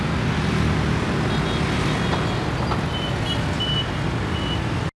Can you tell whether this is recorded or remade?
recorded